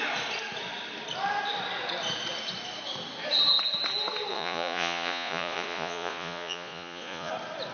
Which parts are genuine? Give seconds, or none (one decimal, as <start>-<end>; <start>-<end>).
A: 0.0-4.3; 7.3-7.7